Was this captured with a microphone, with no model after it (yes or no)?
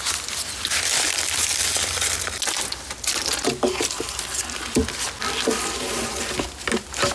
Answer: yes